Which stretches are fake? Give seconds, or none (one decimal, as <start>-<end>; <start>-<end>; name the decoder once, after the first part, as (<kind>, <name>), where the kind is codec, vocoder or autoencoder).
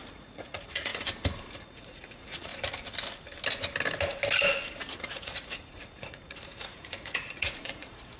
0.0-0.9 (vocoder, Vocos); 1.5-2.5; 4.9-8.2